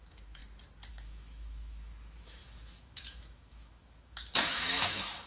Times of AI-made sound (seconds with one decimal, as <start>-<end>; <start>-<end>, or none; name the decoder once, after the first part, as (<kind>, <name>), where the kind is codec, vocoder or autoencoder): 0.0-0.4 (autoencoder, DAC-VAE); 0.9-5.3

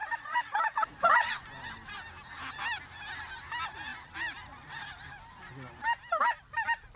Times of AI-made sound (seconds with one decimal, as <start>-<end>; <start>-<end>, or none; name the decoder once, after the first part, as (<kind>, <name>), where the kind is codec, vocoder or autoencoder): 0.0-1.4 (vocoder, Vocos)